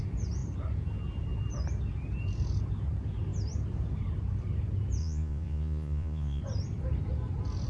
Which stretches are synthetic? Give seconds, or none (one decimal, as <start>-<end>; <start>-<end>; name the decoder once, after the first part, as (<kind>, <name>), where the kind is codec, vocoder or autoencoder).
5.0-6.4 (vocoder, Vocos)